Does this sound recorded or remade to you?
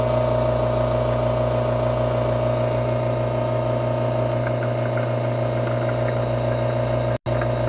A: recorded